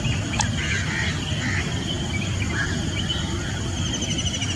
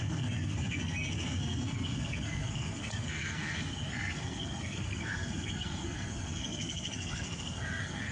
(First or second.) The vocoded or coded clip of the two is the second